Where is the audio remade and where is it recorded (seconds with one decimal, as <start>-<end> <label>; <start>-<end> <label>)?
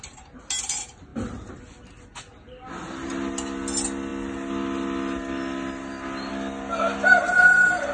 0.0-7.9 recorded